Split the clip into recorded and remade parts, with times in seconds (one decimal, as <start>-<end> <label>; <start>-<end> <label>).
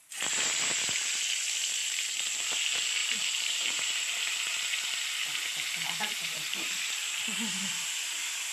0.0-1.8 recorded; 1.8-2.4 remade; 2.4-3.0 recorded; 3.0-7.7 remade; 7.7-8.5 recorded